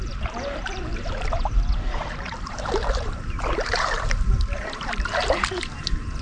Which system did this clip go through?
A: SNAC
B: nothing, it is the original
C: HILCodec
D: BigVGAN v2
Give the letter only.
D